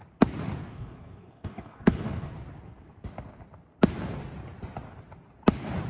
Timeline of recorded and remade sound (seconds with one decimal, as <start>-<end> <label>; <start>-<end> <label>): 0.0-0.7 recorded; 0.7-2.3 remade; 2.3-5.9 recorded

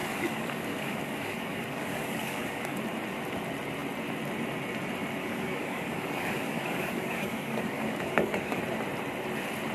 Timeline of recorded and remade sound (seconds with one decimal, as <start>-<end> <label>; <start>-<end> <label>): 0.0-2.8 remade; 2.8-5.2 recorded; 5.2-8.6 remade; 8.6-9.7 recorded

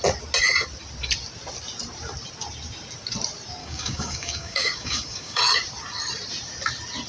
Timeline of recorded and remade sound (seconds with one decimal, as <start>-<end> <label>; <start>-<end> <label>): 0.0-3.6 recorded; 3.6-5.4 remade; 5.4-7.1 recorded

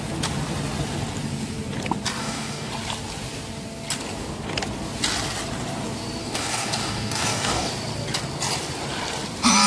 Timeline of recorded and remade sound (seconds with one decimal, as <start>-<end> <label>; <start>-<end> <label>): 0.0-2.2 recorded; 2.2-2.7 remade; 2.7-6.2 recorded; 6.2-7.7 remade; 7.7-9.7 recorded

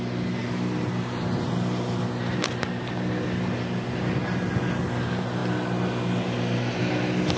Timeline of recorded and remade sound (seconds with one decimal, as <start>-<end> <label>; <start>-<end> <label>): 0.0-7.4 recorded

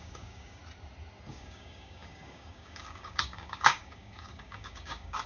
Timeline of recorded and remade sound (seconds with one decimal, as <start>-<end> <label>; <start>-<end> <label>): 0.0-0.6 remade; 0.6-1.3 recorded; 1.3-5.3 remade

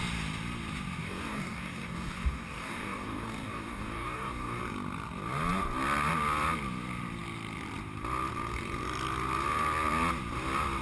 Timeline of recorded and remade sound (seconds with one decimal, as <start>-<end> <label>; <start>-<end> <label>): 0.0-1.0 recorded; 1.0-4.6 remade; 4.6-10.8 recorded

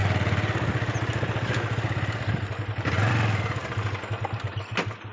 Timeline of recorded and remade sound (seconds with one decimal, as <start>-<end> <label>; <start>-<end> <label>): 0.0-5.1 recorded